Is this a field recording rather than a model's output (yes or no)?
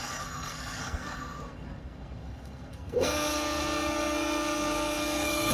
no